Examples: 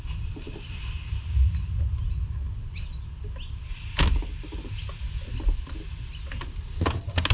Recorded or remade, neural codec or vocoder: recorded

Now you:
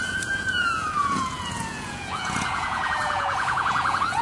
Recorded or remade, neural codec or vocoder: remade, vocoder, Vocos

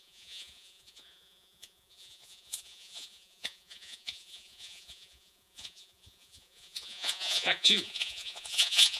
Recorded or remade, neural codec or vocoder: remade, vocoder, Vocos